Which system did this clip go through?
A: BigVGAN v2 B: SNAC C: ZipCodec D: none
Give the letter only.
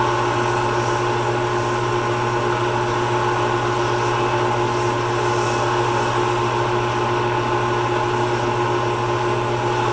D